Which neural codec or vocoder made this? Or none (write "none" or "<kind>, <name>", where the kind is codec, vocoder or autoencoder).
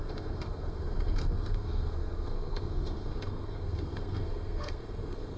codec, SNAC